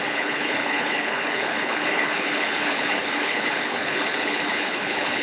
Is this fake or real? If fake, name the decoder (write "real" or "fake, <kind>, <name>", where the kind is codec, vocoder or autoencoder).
fake, codec, HILCodec